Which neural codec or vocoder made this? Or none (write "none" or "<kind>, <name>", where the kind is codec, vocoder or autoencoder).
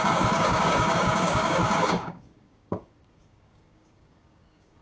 codec, DAC